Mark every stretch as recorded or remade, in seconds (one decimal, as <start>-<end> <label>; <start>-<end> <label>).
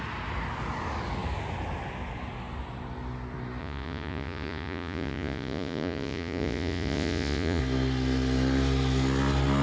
0.0-3.6 recorded; 3.6-7.6 remade; 7.6-9.6 recorded